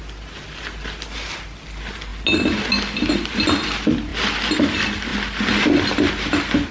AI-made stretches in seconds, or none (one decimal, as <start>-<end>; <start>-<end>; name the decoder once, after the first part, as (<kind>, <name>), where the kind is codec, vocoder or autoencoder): none